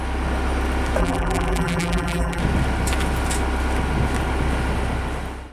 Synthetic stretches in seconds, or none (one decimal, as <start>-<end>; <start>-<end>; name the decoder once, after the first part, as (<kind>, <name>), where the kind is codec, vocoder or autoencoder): 1.0-2.4 (vocoder, BigVGAN v2)